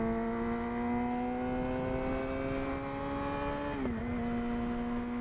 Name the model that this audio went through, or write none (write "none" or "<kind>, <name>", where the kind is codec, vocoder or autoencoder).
none